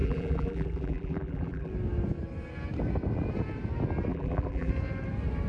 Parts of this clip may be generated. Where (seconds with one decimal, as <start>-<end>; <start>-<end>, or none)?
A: 0.0-1.7; 4.1-4.7